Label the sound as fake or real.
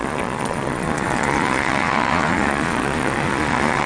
fake